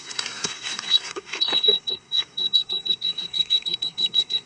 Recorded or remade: remade